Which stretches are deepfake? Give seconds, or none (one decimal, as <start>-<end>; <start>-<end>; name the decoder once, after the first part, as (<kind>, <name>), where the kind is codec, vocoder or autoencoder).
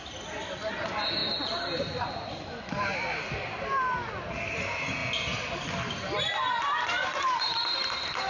none